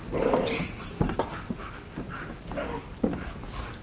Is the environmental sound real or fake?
real